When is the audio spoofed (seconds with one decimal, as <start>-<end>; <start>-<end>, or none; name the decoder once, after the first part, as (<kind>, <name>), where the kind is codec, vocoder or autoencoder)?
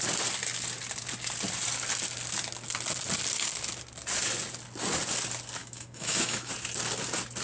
5.6-6.5 (autoencoder, DAC-VAE)